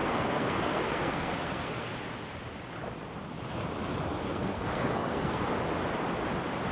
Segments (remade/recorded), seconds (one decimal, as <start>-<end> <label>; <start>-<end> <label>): 0.0-1.9 remade; 1.9-4.2 recorded; 4.2-5.5 remade; 5.5-6.7 recorded